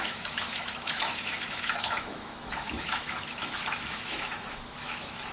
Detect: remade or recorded remade